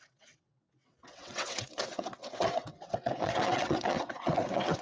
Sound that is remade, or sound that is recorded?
remade